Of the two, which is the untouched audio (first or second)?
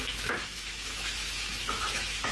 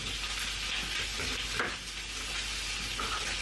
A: second